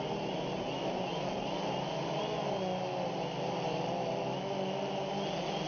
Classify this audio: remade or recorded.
recorded